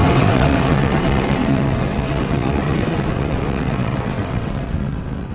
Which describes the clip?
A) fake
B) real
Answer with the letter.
A